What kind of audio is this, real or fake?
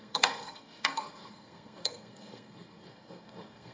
fake